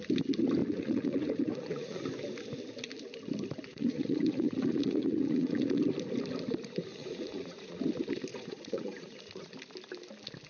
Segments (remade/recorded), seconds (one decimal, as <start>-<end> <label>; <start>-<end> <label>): 0.0-0.6 recorded; 0.6-2.0 remade; 2.0-3.7 recorded; 3.7-5.8 remade; 5.8-6.9 recorded; 6.9-7.8 remade; 7.8-8.3 recorded; 8.3-9.5 remade; 9.5-10.5 recorded